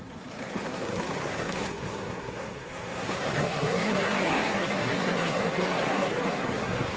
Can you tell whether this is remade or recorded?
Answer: remade